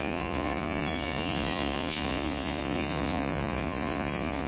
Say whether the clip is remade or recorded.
remade